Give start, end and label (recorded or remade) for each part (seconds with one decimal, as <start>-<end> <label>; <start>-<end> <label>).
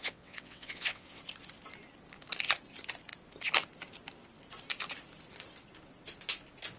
0.0-1.2 remade; 1.2-6.8 recorded